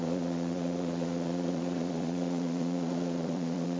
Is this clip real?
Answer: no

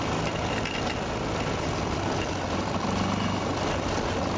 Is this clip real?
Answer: yes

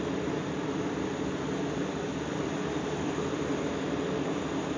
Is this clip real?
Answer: yes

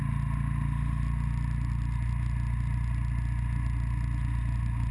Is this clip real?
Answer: yes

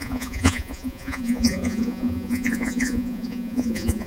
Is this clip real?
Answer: no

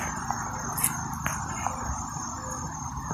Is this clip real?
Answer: yes